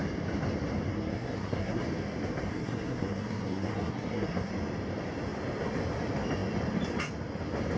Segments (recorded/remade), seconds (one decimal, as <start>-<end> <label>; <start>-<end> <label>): 0.0-0.9 recorded; 0.9-1.8 remade; 1.8-2.5 recorded; 2.5-4.5 remade; 4.5-7.8 recorded

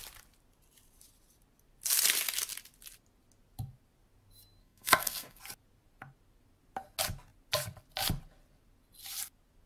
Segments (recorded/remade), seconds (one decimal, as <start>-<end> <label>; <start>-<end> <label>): 0.0-4.6 recorded; 4.6-5.4 remade; 5.4-9.7 recorded

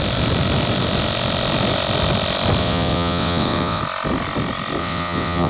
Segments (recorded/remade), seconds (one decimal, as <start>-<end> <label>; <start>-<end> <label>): 0.0-2.6 recorded; 2.6-3.8 remade; 3.8-4.8 recorded; 4.8-5.5 remade

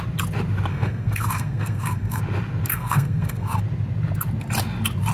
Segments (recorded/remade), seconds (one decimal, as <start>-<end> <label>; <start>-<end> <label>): 0.0-0.7 recorded; 0.7-2.2 remade; 2.2-2.7 recorded; 2.7-3.6 remade; 3.6-5.1 recorded

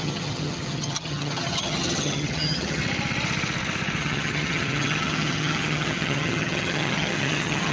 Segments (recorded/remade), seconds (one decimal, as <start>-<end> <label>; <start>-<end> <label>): 0.0-2.8 remade; 2.8-4.0 recorded; 4.0-7.7 remade

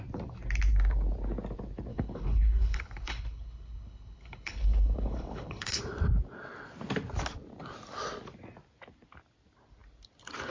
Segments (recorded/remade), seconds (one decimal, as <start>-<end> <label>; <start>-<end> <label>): 0.0-1.9 recorded; 1.9-5.8 remade; 5.8-10.5 recorded

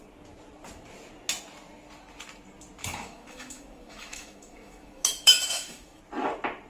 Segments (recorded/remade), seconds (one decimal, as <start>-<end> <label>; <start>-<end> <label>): 0.0-2.8 recorded; 2.8-6.0 remade; 6.0-6.7 recorded

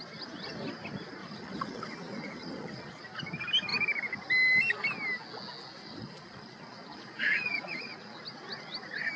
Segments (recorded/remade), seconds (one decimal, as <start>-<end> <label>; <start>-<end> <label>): 0.0-1.2 recorded; 1.2-3.0 remade; 3.0-5.8 recorded; 5.8-8.2 remade; 8.2-9.2 recorded